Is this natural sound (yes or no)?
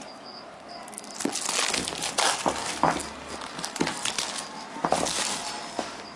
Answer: yes